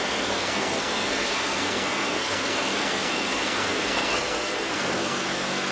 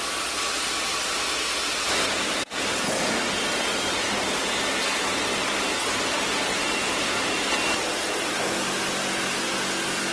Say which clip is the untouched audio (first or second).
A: second